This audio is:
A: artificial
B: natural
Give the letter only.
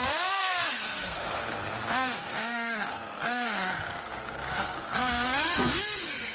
A